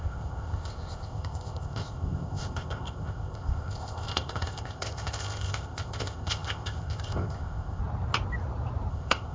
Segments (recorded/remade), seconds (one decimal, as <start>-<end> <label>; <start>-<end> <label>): 0.0-7.8 remade; 7.8-8.9 recorded; 8.9-9.3 remade

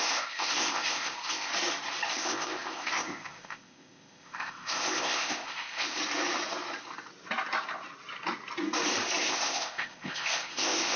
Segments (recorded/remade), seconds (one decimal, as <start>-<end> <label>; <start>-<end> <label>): 0.0-1.5 remade; 1.5-2.1 recorded; 2.1-6.0 remade; 6.0-9.2 recorded; 9.2-11.0 remade

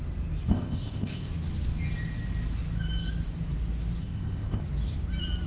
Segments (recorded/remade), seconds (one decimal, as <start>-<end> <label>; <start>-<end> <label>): 0.0-0.5 recorded; 0.5-1.3 remade; 1.3-4.0 recorded; 4.0-4.6 remade; 4.6-5.5 recorded

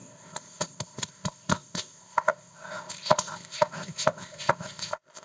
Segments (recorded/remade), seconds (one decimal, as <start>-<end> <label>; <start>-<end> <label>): 0.0-5.2 remade

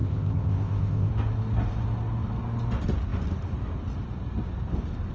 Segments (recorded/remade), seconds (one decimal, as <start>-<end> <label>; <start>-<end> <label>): 0.0-1.1 remade; 1.1-5.1 recorded

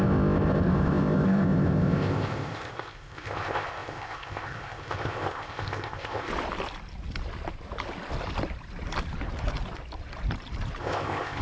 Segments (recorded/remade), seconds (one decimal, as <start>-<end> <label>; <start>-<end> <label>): 0.0-6.3 remade; 6.3-10.8 recorded; 10.8-11.4 remade

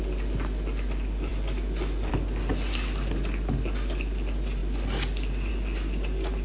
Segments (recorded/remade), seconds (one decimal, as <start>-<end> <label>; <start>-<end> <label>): 0.0-6.4 recorded